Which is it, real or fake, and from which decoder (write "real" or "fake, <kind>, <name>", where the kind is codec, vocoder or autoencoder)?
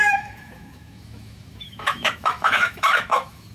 fake, autoencoder, DAC-VAE